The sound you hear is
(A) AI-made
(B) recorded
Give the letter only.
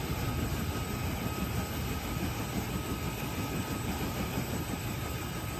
B